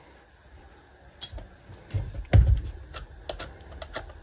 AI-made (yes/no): no